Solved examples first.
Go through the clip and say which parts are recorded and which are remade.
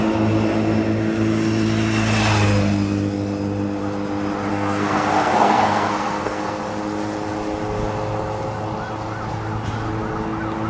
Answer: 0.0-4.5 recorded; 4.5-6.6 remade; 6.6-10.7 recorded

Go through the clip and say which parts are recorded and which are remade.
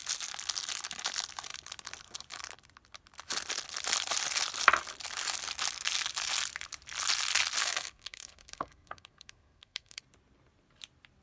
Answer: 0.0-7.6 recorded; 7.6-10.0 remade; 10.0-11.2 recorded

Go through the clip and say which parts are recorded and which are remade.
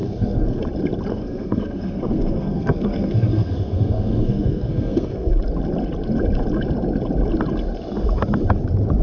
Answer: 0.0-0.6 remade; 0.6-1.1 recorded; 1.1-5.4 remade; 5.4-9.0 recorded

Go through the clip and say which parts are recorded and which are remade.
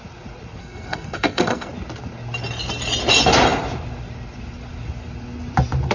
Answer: 0.0-0.6 recorded; 0.6-1.7 remade; 1.7-5.9 recorded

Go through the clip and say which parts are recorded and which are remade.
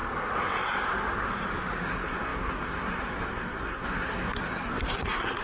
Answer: 0.0-1.8 recorded; 1.8-5.4 remade